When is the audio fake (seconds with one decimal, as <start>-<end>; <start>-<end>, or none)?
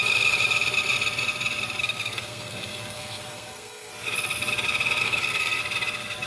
1.8-3.9; 5.0-5.6